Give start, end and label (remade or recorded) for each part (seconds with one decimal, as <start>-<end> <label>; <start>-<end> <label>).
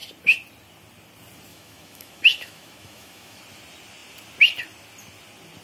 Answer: 0.0-1.5 recorded; 1.5-3.4 remade; 3.4-5.6 recorded